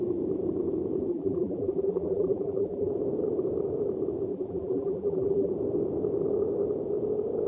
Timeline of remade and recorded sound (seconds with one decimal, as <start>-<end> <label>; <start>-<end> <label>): 0.0-1.1 recorded; 1.1-2.9 remade; 2.9-4.3 recorded; 4.3-5.5 remade; 5.5-7.5 recorded